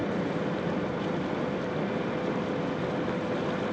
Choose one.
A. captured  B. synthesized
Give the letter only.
A